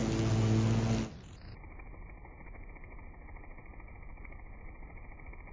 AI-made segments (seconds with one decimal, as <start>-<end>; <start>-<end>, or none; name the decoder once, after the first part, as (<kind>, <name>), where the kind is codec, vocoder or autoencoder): none